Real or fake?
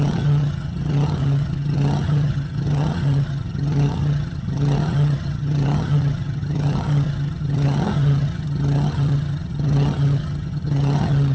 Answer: fake